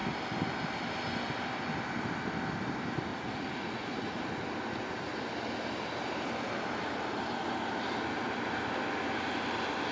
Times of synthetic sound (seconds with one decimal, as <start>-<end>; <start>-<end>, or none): 3.1-4.2